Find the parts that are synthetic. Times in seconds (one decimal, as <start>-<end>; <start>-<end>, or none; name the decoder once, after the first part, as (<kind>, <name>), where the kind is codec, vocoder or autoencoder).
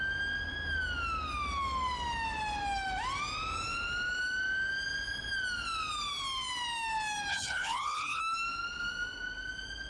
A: 7.3-8.2 (codec, HILCodec)